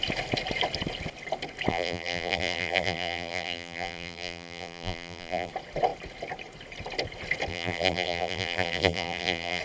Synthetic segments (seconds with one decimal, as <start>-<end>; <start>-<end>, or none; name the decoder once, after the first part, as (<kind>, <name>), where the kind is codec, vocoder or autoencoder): 1.7-5.5 (vocoder, BigVGAN v2); 7.5-9.6